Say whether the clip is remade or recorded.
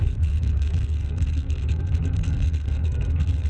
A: remade